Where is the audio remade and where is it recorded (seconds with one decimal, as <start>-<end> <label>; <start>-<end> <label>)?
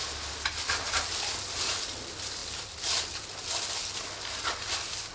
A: 0.0-5.1 recorded